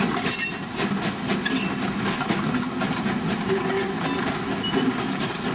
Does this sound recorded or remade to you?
recorded